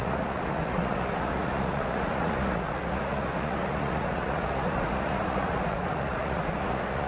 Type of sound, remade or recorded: remade